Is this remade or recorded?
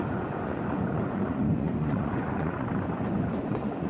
remade